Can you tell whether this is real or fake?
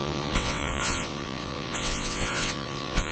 fake